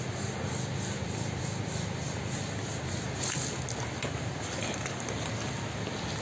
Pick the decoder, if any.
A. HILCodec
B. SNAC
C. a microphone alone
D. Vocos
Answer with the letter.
C